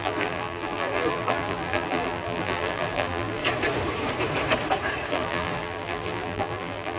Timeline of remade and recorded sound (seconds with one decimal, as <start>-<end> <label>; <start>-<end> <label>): 0.0-3.4 remade; 3.4-5.1 recorded; 5.1-7.0 remade